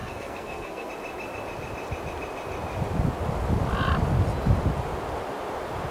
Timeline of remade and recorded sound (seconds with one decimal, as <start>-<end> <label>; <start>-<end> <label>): 0.0-0.9 remade; 0.9-5.9 recorded